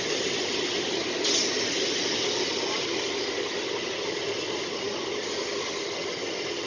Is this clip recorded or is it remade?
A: recorded